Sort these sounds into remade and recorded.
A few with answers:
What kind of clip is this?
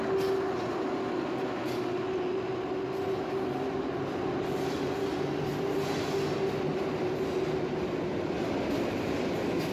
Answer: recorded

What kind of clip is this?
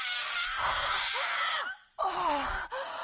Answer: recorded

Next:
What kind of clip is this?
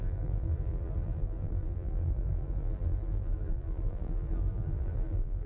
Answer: remade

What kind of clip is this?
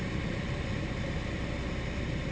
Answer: remade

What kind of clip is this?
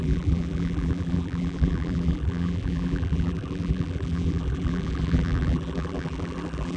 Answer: remade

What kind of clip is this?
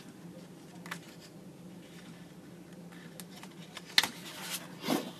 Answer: recorded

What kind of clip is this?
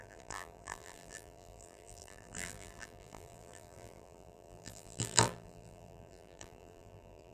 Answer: remade